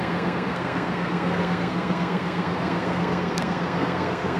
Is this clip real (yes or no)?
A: no